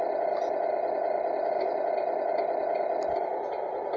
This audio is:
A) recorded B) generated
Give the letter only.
A